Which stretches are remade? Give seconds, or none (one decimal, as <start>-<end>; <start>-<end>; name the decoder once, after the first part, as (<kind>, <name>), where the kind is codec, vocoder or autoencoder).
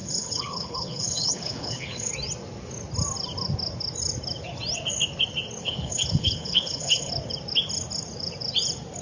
0.0-2.1 (codec, HILCodec); 5.6-7.1